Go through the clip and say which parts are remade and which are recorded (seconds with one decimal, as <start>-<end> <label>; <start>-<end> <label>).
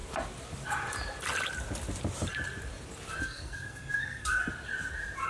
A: 0.0-3.2 recorded; 3.2-4.4 remade; 4.4-5.3 recorded